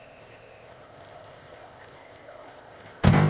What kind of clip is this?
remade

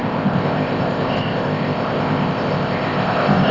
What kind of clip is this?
remade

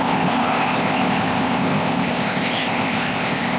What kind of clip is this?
remade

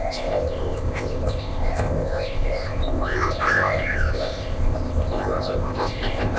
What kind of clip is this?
remade